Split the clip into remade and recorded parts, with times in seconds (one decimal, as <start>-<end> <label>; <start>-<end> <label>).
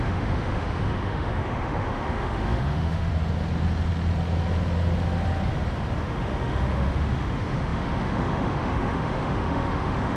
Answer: 0.0-3.1 remade; 3.1-6.0 recorded; 6.0-10.2 remade